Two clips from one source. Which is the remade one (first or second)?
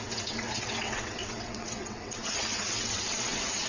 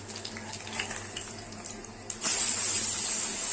first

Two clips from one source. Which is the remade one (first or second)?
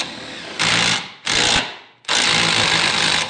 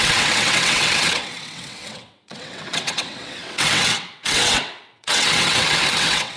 second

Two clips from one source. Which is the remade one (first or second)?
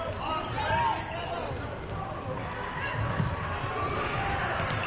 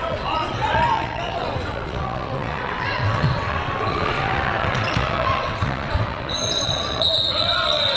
second